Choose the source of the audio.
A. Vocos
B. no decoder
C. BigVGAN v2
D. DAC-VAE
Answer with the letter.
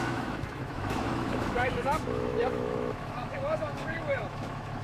D